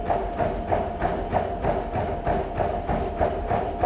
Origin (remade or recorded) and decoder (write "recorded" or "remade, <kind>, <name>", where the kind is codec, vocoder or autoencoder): recorded